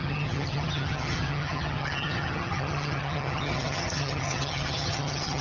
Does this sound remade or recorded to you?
remade